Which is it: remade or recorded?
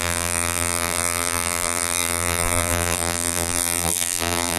remade